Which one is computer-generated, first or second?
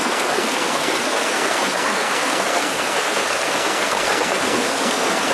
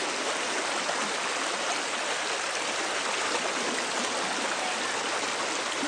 first